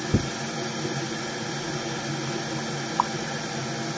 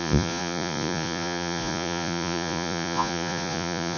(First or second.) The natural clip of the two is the first